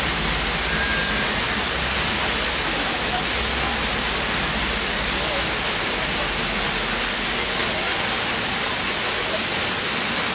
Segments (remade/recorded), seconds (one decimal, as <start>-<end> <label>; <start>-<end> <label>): 0.0-10.3 recorded